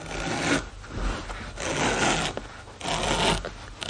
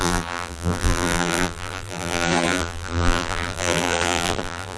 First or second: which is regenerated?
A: second